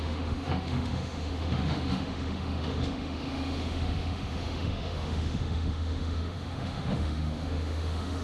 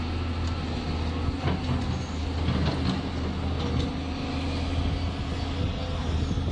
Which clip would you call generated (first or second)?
first